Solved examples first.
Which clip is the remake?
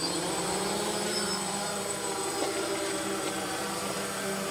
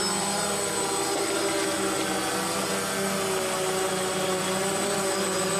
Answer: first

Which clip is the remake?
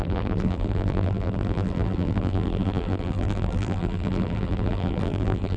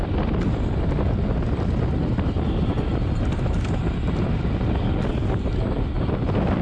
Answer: first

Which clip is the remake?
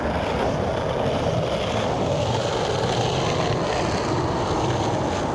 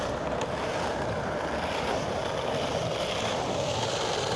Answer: second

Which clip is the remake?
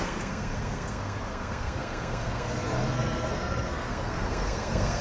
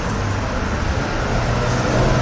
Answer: first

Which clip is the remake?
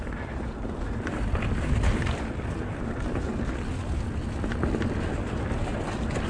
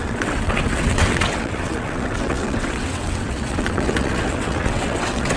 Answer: second